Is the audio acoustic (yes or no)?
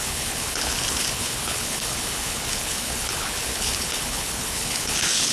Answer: no